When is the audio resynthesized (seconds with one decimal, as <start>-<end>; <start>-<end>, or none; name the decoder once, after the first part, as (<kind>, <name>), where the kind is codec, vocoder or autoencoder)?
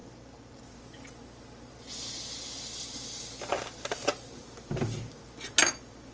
none